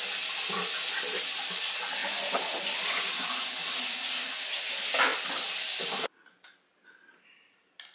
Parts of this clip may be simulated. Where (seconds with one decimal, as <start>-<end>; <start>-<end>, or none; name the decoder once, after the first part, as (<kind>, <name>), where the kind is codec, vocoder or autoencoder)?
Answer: none